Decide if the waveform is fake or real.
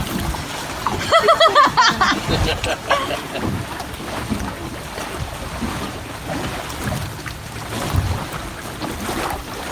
real